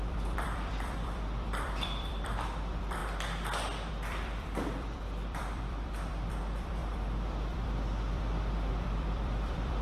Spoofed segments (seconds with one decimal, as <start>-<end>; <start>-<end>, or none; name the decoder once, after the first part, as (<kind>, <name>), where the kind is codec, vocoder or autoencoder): 0.0-3.0 (vocoder, BigVGAN v2); 3.9-9.8